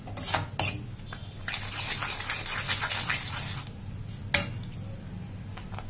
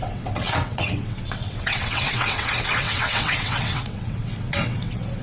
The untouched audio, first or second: first